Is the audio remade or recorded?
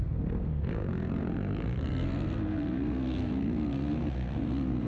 remade